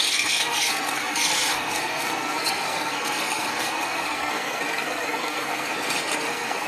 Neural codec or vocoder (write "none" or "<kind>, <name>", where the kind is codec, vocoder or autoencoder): codec, SNAC